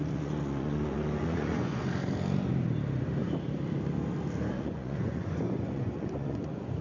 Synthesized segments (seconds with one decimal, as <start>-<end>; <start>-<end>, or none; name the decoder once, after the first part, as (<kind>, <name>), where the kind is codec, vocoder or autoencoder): 0.0-1.8 (vocoder, Vocos); 4.5-6.8